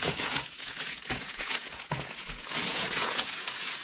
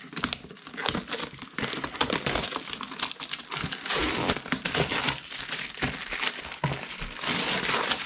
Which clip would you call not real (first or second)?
first